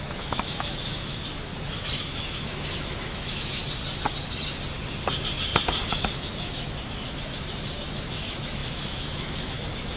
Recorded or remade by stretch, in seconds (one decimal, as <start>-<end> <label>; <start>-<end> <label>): 0.0-1.5 remade; 1.5-2.0 recorded; 2.0-3.6 remade; 3.6-5.9 recorded; 5.9-10.0 remade